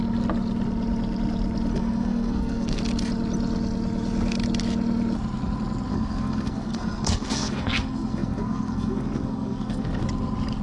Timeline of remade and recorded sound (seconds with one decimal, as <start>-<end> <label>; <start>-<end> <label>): 0.0-1.8 recorded; 1.8-2.8 remade; 2.8-5.9 recorded; 5.9-10.0 remade; 10.0-10.6 recorded